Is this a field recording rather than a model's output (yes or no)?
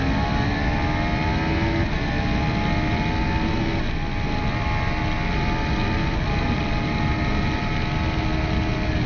yes